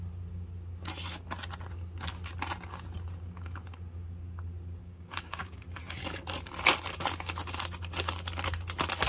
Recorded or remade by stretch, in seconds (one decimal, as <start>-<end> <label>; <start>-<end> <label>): 0.0-4.8 recorded; 4.8-5.6 remade; 5.6-9.1 recorded